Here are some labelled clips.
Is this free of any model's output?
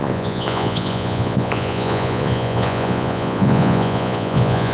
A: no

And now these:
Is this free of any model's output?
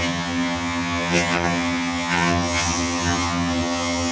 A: no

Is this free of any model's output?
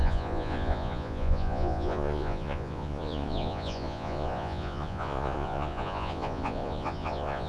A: no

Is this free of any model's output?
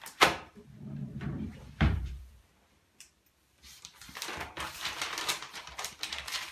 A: no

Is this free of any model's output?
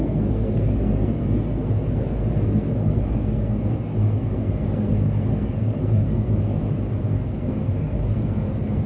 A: no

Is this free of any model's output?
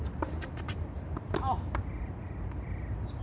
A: yes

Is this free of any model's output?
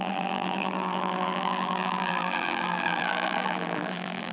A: no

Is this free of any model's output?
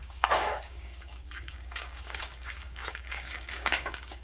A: no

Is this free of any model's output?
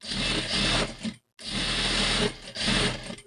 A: yes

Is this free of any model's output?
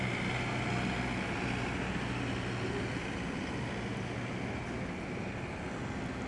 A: yes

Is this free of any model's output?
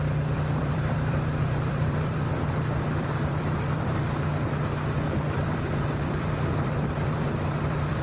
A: no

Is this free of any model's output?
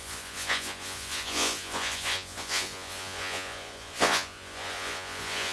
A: no